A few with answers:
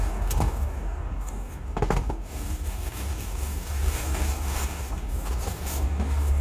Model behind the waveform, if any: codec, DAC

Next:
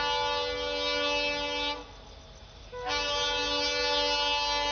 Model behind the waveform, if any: none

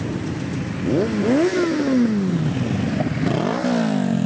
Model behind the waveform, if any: none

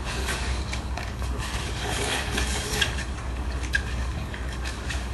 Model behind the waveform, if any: codec, DAC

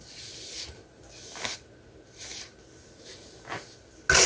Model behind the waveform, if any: none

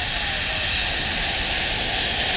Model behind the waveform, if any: none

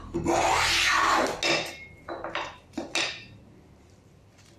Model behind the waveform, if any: none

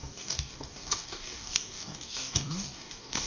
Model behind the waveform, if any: codec, DAC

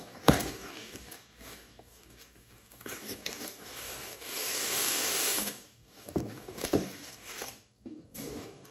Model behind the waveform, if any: codec, DAC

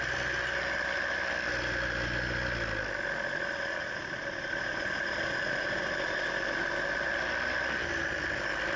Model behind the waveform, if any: none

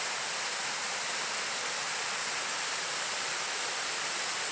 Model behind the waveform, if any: none